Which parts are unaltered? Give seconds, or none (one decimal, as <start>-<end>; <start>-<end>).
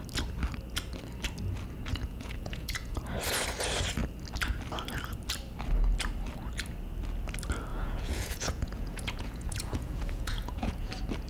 0.0-1.9; 3.0-7.7; 10.9-11.3